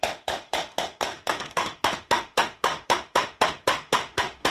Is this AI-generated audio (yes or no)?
yes